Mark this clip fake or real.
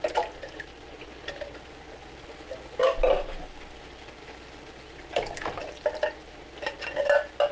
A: real